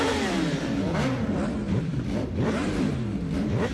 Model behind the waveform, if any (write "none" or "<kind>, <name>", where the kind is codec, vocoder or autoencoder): vocoder, BigVGAN v2